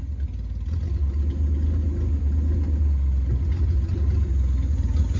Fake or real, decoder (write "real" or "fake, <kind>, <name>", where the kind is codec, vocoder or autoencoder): real